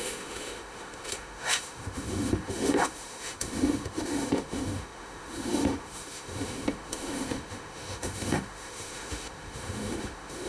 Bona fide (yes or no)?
no